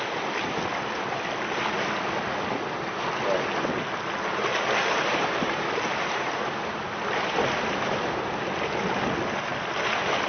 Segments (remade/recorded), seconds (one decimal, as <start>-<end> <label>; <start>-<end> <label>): 0.0-5.1 recorded; 5.1-6.4 remade; 6.4-10.3 recorded